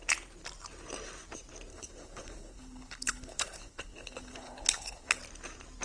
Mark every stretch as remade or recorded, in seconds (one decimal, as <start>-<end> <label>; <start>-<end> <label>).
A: 0.0-1.7 recorded; 1.7-5.2 remade; 5.2-5.8 recorded